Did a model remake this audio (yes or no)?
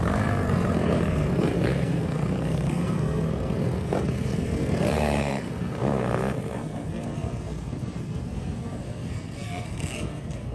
yes